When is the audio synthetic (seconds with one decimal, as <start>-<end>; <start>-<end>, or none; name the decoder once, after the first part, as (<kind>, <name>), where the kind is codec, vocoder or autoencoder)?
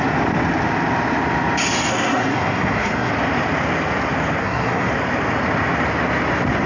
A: 1.9-3.1 (codec, SNAC); 4.4-4.9